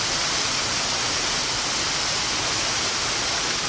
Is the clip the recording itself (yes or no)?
yes